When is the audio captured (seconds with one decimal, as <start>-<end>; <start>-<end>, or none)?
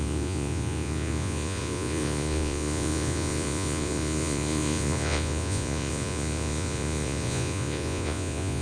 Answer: none